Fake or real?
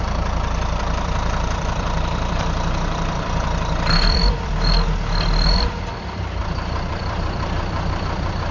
fake